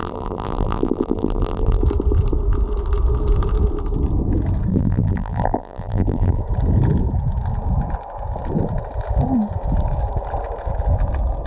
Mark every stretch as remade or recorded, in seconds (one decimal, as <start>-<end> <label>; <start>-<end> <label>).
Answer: 0.0-1.8 remade; 1.8-4.7 recorded; 4.7-6.4 remade; 6.4-11.5 recorded